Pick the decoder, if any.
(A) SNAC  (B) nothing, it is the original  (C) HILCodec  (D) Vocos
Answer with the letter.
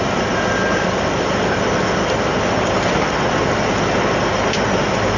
B